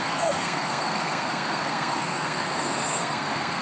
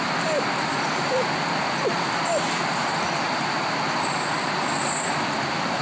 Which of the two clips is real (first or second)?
second